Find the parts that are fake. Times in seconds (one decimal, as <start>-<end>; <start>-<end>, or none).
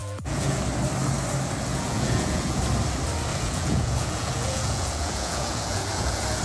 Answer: 0.0-0.6; 1.7-2.6; 3.3-6.4